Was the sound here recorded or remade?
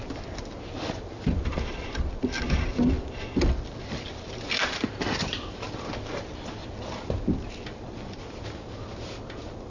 recorded